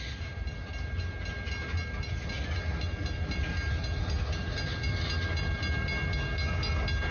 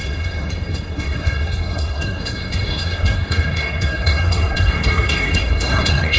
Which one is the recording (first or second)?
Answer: first